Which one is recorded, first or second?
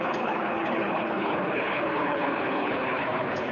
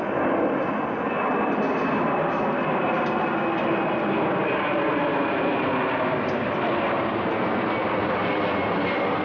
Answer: second